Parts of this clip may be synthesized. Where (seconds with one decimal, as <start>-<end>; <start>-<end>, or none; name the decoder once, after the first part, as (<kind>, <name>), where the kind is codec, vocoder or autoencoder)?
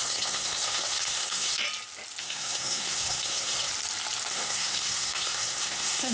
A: 0.0-1.6 (codec, SNAC); 2.2-3.7; 4.3-6.1